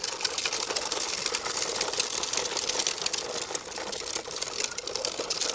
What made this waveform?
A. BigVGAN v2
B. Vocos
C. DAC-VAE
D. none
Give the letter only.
D